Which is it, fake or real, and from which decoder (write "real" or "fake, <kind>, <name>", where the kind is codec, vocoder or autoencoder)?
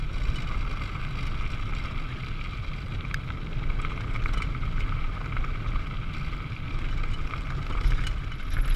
real